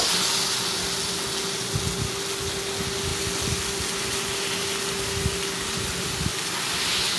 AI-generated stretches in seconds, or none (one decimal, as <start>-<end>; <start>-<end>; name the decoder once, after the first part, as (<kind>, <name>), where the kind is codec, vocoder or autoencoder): none